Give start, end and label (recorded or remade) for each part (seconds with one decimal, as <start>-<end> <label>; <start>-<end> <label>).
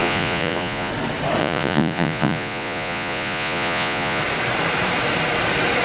0.0-0.9 remade; 0.9-1.4 recorded; 1.4-4.2 remade; 4.2-5.8 recorded